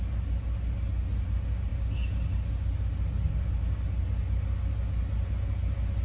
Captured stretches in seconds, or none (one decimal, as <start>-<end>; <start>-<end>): 0.0-6.0